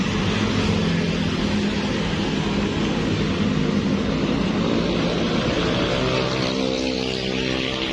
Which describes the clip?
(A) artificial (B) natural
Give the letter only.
B